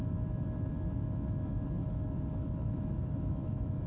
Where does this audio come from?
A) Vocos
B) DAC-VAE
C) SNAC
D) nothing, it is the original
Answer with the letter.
B